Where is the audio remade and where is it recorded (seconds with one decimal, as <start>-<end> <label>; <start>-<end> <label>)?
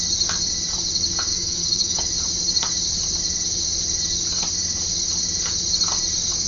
0.0-1.3 recorded; 1.3-2.1 remade; 2.1-6.5 recorded